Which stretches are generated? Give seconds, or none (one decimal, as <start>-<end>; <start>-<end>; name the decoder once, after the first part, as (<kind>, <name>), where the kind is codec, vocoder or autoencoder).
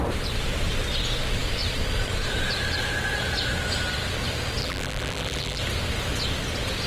4.6-5.6 (vocoder, BigVGAN v2)